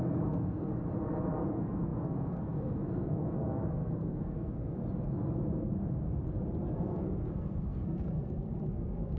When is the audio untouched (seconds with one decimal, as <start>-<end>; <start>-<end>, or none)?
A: 0.7-1.5; 4.8-6.7

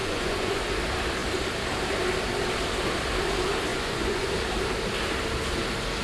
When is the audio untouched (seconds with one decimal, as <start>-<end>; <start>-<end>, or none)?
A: 0.6-3.7; 4.3-6.0

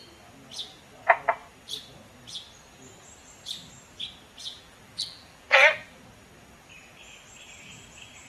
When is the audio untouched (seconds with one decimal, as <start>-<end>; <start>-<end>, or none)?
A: 0.0-4.4; 6.0-8.3